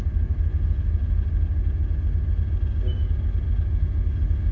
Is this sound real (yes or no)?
yes